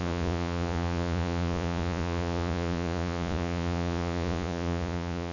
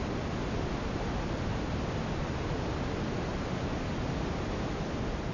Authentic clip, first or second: second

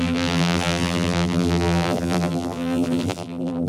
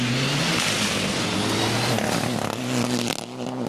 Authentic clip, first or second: second